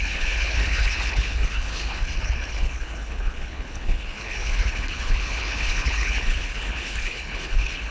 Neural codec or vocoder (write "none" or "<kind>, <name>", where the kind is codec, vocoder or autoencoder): codec, HILCodec